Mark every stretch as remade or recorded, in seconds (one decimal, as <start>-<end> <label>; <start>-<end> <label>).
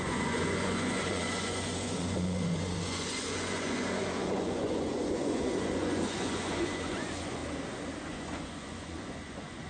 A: 0.0-7.4 remade; 7.4-8.0 recorded; 8.0-9.7 remade